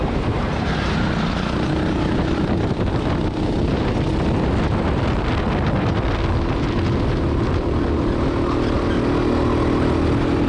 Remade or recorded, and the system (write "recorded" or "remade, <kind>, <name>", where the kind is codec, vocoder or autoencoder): recorded